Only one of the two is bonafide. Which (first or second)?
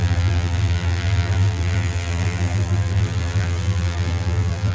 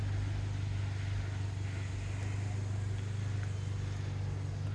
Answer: second